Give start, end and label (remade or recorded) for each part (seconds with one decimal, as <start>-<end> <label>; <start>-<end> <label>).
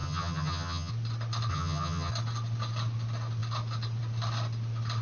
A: 0.0-0.9 remade; 0.9-1.5 recorded; 1.5-2.1 remade; 2.1-5.0 recorded